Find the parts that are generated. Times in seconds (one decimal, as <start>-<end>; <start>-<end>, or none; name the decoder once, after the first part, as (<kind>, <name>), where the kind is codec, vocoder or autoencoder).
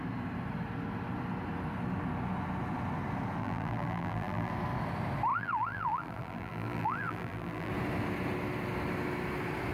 3.4-4.5 (vocoder, BigVGAN v2); 5.3-7.7